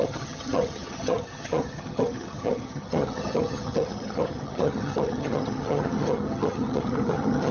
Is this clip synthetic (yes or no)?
yes